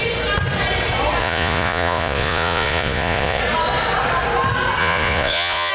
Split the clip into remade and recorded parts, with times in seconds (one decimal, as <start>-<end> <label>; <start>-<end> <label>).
0.0-1.2 recorded; 1.2-3.4 remade; 3.4-4.8 recorded; 4.8-5.7 remade